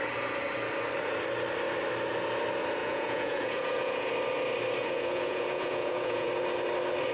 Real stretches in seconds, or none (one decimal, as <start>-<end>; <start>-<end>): 0.0-2.8; 4.1-4.8; 6.3-7.1